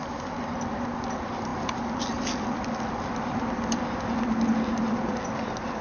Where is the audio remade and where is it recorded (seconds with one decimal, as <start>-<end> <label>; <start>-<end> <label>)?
0.0-5.8 recorded